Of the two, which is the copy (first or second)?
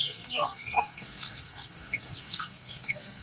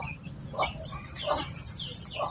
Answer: first